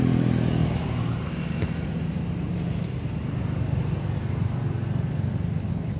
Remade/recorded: recorded